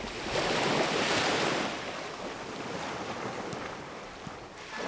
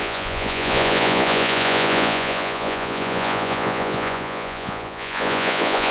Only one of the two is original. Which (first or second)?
first